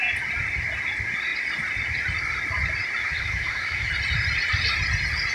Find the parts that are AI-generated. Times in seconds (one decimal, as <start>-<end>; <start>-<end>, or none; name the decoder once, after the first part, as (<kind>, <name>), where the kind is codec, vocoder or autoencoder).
3.0-3.9 (autoencoder, DAC-VAE)